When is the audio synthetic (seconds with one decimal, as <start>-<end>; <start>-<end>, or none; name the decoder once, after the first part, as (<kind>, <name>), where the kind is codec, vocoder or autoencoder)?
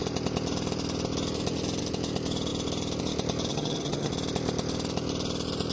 3.5-4.1 (vocoder, HiFi-GAN)